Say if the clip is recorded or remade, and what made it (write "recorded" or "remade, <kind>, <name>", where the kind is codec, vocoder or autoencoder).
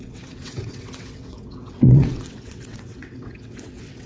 remade, vocoder, WaveNeXt